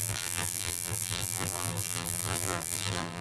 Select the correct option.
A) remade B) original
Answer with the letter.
A